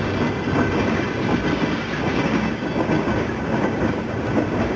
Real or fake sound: fake